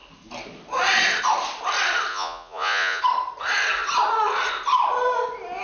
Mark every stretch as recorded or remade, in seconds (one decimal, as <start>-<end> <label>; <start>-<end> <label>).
0.0-2.1 recorded; 2.1-3.0 remade; 3.0-5.6 recorded